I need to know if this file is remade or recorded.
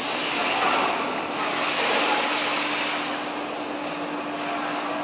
recorded